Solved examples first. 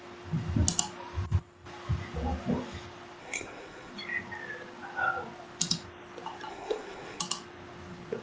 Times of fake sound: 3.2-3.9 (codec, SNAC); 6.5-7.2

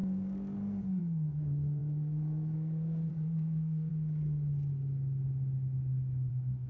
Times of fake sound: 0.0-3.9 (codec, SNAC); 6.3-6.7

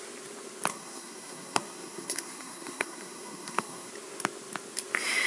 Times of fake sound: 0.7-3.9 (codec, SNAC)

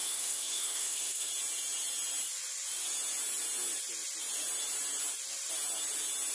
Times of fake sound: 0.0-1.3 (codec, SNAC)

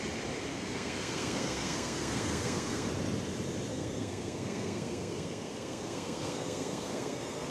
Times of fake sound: 0.5-2.9 (codec, SNAC); 3.7-7.5

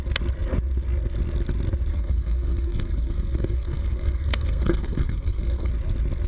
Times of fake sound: 1.9-5.7 (codec, SNAC)

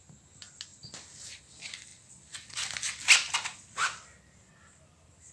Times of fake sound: none